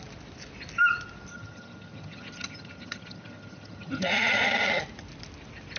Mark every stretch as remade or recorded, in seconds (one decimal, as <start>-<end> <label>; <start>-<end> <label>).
0.0-1.3 recorded; 1.3-4.8 remade; 4.8-5.8 recorded